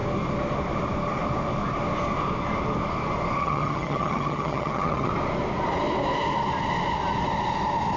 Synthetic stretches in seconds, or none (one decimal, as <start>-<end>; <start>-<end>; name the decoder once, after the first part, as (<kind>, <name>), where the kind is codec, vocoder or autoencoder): 3.4-5.1 (vocoder, HiFi-GAN)